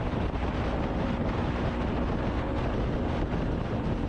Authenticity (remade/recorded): recorded